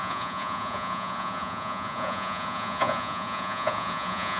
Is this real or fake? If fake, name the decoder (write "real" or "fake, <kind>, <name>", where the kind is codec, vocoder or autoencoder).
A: fake, vocoder, Vocos